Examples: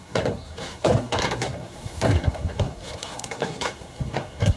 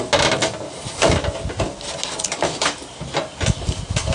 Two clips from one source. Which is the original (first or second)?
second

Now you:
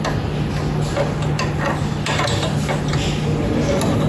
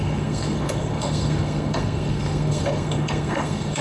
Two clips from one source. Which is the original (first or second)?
first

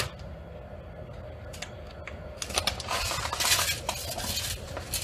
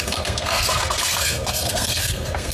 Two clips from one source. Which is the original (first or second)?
first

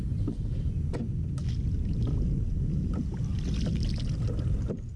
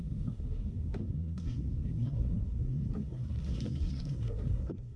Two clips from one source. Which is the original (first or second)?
first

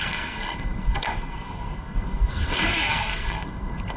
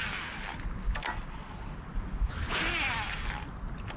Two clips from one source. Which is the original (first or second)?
second